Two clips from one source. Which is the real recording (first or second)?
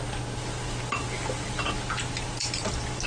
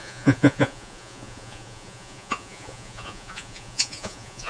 first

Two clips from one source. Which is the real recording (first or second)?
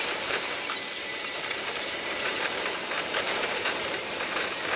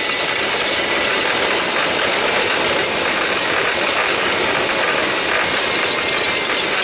second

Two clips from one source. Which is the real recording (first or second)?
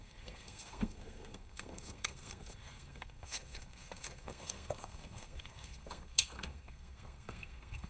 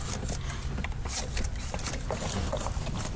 second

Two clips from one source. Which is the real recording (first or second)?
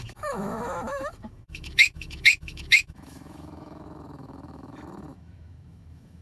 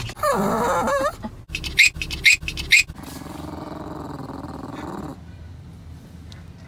second